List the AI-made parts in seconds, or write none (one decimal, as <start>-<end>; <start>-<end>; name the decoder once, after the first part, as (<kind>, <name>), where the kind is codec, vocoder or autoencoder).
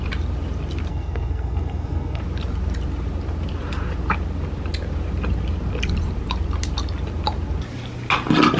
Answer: 0.9-2.2 (codec, SNAC)